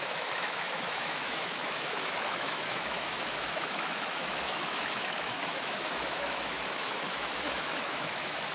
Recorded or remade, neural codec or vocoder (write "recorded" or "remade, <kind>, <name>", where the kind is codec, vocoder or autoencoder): remade, autoencoder, DAC-VAE